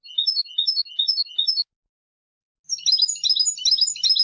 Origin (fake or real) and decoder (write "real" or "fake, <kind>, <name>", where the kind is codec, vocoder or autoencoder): real